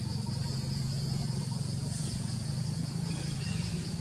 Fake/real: fake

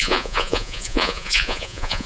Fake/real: fake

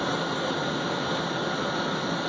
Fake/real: real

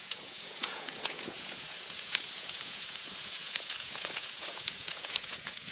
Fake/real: fake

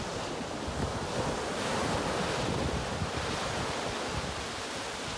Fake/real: real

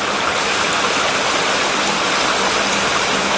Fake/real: real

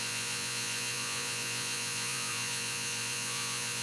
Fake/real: fake